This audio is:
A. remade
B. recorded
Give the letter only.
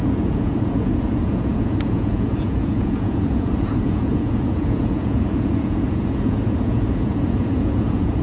A